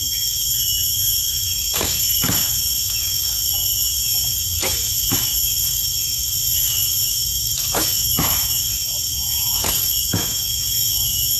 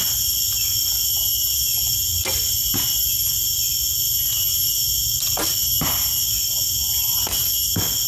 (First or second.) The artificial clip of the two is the first